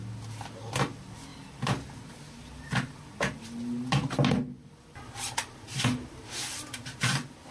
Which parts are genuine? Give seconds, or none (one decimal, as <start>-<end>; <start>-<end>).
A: 0.0-7.5